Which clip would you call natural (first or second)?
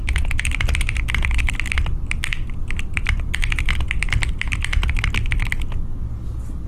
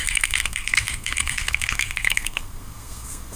first